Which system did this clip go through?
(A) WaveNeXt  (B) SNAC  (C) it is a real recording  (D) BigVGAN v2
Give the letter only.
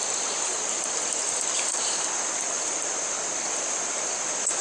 C